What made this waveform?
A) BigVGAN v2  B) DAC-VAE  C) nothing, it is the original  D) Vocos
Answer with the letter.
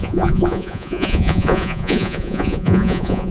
D